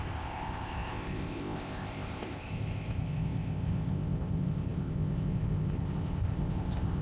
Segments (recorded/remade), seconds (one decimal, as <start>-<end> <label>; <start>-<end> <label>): 0.0-7.0 remade